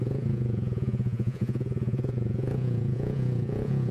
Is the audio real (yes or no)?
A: no